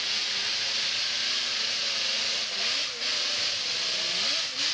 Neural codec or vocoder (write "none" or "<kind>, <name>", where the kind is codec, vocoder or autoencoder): none